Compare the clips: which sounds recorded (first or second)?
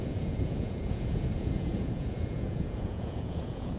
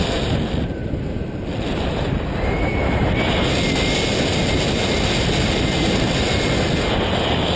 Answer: second